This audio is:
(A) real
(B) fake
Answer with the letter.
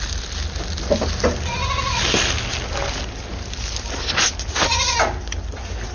A